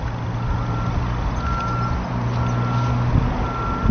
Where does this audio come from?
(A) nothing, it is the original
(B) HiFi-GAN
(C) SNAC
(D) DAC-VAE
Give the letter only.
A